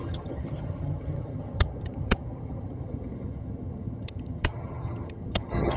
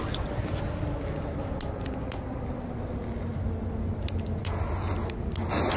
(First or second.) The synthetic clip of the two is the first